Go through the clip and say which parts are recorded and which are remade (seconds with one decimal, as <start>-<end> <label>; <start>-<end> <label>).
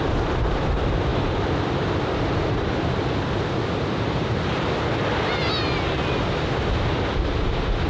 0.0-7.9 recorded